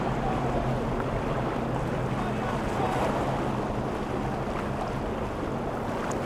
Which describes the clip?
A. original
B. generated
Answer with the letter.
A